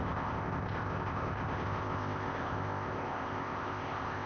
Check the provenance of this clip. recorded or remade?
remade